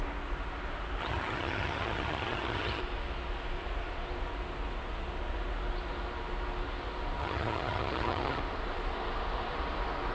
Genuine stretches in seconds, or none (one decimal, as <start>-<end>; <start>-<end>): 0.0-1.0; 2.8-7.2; 8.4-10.1